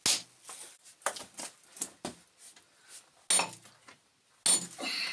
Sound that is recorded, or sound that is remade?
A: recorded